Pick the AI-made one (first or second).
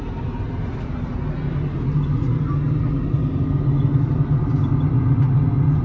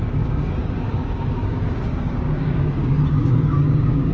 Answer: second